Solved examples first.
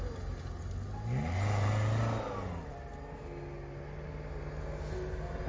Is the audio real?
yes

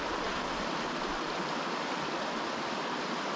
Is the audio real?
yes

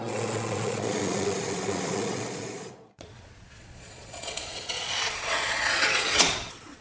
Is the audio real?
no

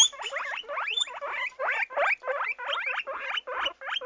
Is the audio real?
yes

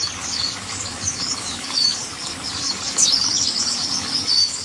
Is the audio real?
no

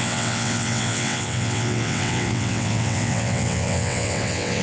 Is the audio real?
no